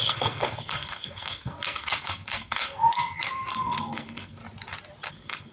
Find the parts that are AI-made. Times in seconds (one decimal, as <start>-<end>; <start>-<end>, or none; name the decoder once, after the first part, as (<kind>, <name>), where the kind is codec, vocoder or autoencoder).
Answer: 0.0-4.4 (codec, SNAC); 5.1-5.5